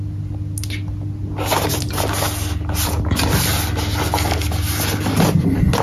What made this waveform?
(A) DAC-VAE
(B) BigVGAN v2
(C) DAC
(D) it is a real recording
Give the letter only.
D